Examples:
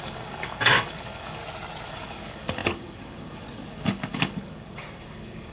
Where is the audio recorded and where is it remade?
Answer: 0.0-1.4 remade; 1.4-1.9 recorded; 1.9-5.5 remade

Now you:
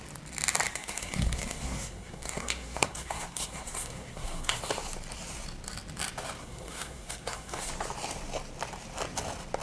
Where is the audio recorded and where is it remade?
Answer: 0.0-0.7 recorded; 0.7-4.6 remade; 4.6-6.4 recorded; 6.4-7.7 remade; 7.7-9.6 recorded

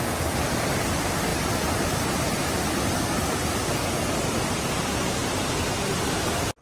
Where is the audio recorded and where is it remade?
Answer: 0.0-6.6 recorded

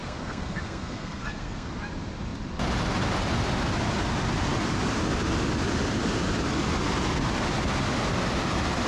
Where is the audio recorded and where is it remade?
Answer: 0.0-1.7 remade; 1.7-8.9 recorded

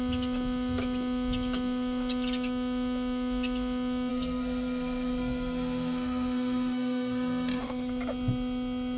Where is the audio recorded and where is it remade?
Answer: 0.0-4.1 recorded; 4.1-7.6 remade; 7.6-9.0 recorded